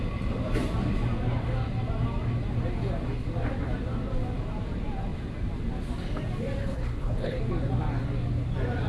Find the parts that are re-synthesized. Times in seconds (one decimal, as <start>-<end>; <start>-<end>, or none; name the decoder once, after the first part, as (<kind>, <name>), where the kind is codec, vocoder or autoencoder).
6.6-7.4 (codec, HILCodec)